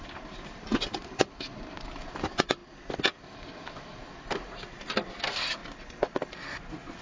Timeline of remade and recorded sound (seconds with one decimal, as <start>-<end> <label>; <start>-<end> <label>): 0.0-0.7 remade; 0.7-1.3 recorded; 1.3-2.6 remade; 2.6-3.6 recorded; 3.6-5.6 remade; 5.6-6.2 recorded; 6.2-7.0 remade